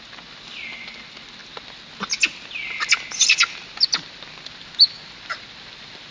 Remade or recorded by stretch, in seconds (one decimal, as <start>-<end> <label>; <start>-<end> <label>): 0.0-6.1 recorded